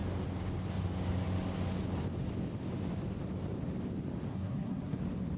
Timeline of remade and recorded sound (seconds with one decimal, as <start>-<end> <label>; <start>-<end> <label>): 0.0-4.3 recorded; 4.3-5.0 remade; 5.0-5.4 recorded